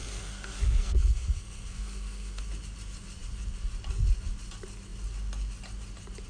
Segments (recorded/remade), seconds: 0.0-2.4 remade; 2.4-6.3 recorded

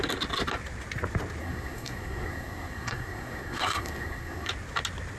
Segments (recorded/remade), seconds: 0.0-1.4 recorded; 1.4-4.5 remade; 4.5-5.2 recorded